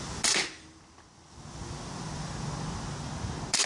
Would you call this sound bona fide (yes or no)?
yes